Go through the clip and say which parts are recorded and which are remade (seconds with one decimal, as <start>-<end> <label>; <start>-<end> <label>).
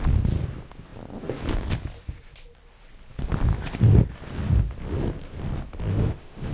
0.0-5.9 recorded; 5.9-6.5 remade